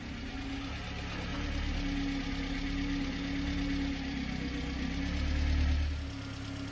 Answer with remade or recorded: recorded